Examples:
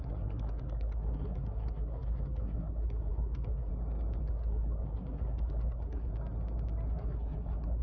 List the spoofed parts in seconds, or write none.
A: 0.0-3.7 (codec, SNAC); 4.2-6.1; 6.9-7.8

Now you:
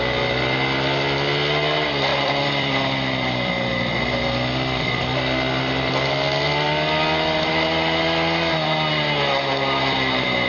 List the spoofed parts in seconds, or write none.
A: 2.1-2.7 (vocoder, BigVGAN v2)

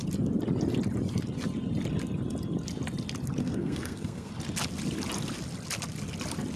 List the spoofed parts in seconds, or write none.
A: 3.4-4.3 (codec, SNAC)

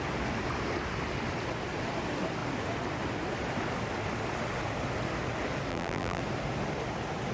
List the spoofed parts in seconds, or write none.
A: 5.7-6.2 (vocoder, BigVGAN v2)

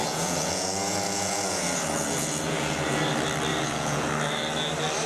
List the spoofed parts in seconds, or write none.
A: 0.0-3.0 (vocoder, Vocos); 3.5-4.1

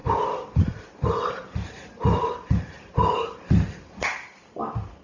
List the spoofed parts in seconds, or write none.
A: none